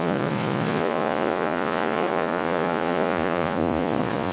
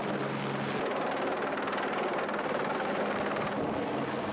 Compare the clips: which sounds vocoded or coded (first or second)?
first